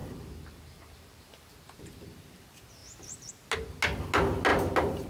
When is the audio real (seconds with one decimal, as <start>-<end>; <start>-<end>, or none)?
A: 1.5-2.8; 3.3-4.5